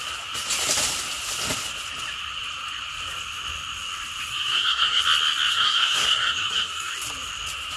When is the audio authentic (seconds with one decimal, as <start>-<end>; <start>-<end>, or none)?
0.0-4.3; 5.0-5.5; 6.9-7.8